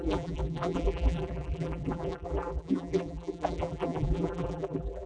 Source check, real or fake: fake